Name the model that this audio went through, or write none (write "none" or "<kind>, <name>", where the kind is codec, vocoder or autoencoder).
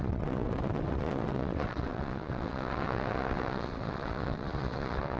vocoder, WaveNeXt